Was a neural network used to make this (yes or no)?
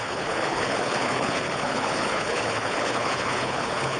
yes